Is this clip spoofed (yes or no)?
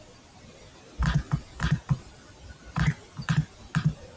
no